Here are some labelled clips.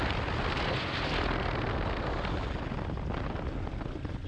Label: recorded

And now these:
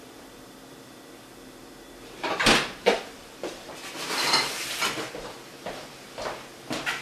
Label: remade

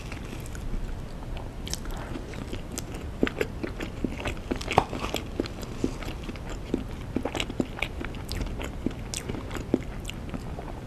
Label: recorded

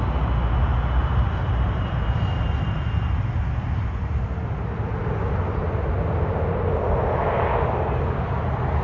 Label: recorded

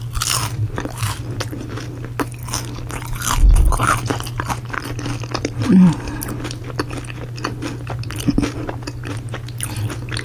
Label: recorded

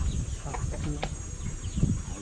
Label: recorded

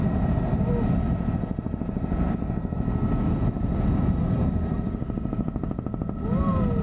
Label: recorded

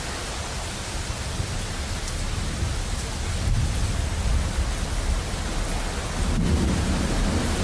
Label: recorded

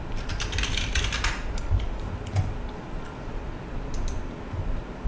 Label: recorded